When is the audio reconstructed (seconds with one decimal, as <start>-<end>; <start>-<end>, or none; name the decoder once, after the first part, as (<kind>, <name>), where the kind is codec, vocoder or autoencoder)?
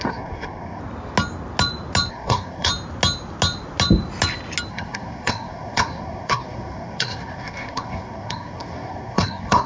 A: 0.0-0.8 (codec, SNAC); 2.1-2.7; 4.7-9.7